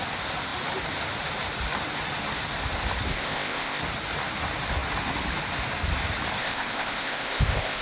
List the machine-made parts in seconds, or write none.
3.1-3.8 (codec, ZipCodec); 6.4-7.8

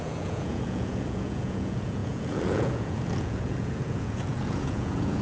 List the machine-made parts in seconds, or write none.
0.0-5.2 (vocoder, Vocos)

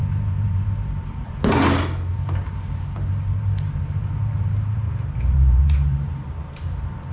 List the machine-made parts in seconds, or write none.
0.0-1.4 (vocoder, BigVGAN v2); 2.1-6.3